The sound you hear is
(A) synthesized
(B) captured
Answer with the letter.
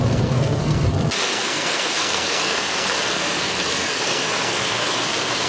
A